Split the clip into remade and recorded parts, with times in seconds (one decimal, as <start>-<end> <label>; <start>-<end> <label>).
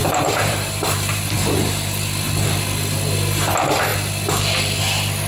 0.0-1.2 remade; 1.2-5.3 recorded